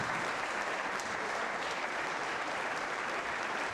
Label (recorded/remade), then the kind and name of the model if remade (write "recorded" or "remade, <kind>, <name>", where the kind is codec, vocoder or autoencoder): remade, vocoder, BigVGAN v2